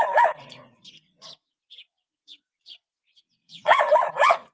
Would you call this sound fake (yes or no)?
yes